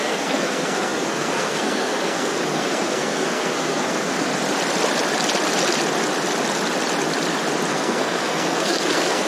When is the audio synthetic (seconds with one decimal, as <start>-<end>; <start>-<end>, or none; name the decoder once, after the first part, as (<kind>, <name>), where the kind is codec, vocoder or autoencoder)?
0.0-4.3 (codec, SNAC); 7.7-9.3